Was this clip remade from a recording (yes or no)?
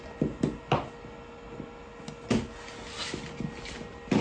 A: no